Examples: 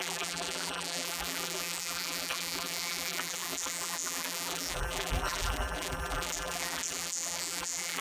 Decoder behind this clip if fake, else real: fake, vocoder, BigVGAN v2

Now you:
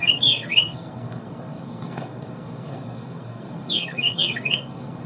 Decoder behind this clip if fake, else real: fake, codec, SNAC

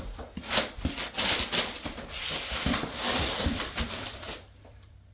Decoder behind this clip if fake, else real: real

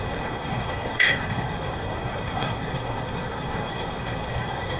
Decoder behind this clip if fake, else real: fake, codec, SNAC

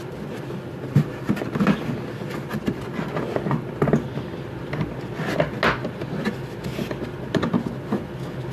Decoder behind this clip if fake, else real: real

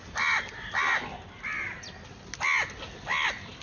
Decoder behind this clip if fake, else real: real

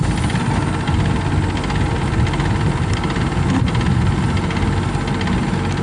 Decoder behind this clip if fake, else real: real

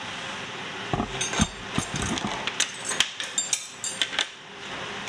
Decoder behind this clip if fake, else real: real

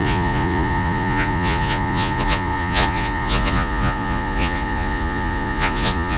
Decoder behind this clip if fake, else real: fake, vocoder, Vocos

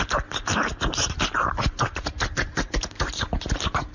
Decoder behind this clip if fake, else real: real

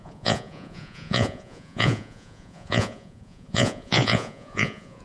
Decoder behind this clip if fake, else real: fake, vocoder, Vocos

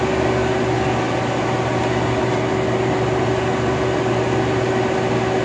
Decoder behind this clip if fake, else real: real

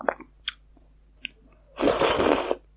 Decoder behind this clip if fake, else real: real